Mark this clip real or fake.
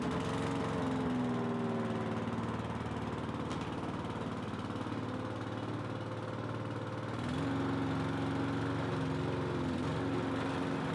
real